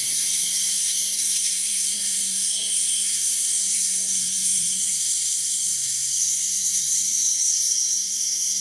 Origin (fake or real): fake